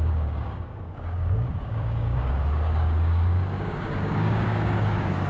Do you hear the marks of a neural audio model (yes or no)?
yes